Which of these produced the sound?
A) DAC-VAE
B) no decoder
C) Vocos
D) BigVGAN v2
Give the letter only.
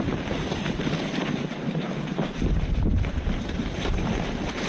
D